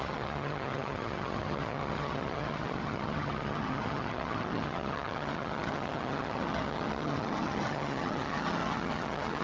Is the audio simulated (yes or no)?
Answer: yes